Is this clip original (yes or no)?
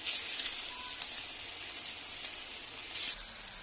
yes